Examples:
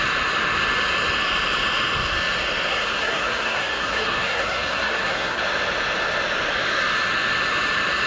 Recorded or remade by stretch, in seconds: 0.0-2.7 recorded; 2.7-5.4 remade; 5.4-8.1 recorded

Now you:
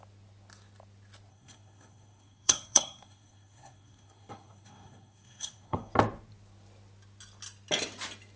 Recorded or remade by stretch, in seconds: 0.0-1.3 recorded; 1.3-5.9 remade; 5.9-8.4 recorded

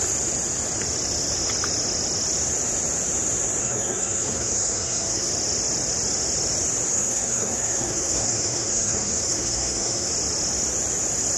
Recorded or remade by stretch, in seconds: 0.0-3.6 recorded; 3.6-5.3 remade; 5.3-6.9 recorded; 6.9-10.1 remade; 10.1-11.4 recorded

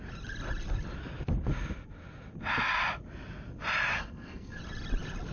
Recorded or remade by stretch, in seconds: 0.0-3.9 recorded; 3.9-4.6 remade; 4.6-5.3 recorded